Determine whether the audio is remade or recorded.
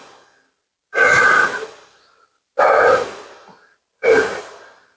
recorded